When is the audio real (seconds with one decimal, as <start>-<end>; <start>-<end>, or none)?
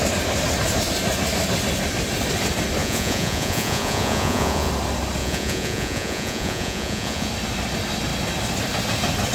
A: 0.0-2.8; 4.7-5.2; 7.3-9.3